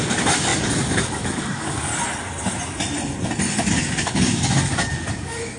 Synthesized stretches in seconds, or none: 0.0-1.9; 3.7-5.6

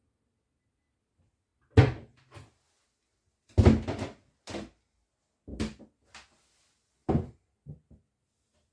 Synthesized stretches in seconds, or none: none

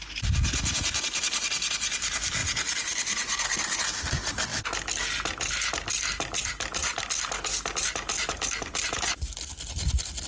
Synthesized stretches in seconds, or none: none